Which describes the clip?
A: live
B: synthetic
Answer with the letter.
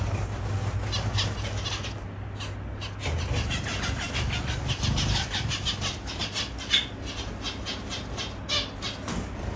A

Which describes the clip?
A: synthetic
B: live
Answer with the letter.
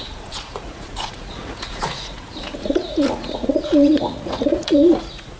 A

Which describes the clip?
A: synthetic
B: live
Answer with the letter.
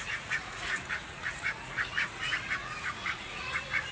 A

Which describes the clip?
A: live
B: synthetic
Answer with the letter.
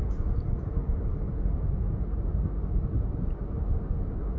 A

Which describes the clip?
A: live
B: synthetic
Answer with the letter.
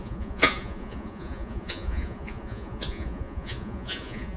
B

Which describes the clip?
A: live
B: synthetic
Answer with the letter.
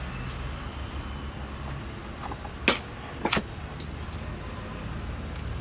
A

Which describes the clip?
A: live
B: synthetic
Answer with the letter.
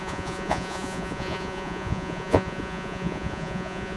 B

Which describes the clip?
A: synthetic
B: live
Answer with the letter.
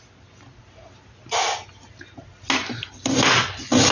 B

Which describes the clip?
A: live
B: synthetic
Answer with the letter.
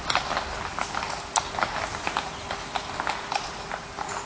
A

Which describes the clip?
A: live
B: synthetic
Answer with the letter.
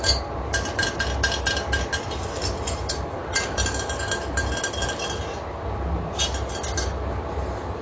A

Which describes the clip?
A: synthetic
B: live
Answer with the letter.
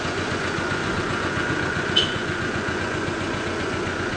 A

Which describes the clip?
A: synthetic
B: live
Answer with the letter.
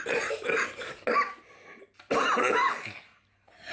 B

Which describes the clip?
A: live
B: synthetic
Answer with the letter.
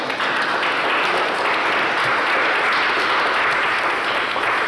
A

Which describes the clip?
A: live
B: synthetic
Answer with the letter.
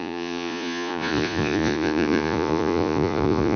B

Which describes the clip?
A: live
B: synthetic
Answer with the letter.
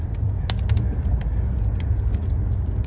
A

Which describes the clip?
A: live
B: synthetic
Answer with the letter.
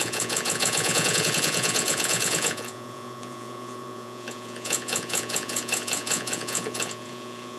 B